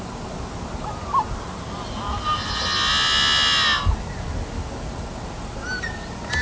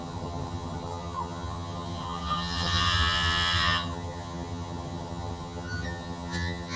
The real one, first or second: first